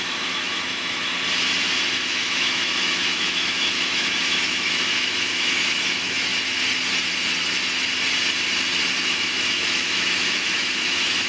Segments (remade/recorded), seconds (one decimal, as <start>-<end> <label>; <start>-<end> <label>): 0.0-1.1 remade; 1.1-1.9 recorded; 1.9-6.3 remade; 6.3-9.0 recorded; 9.0-11.3 remade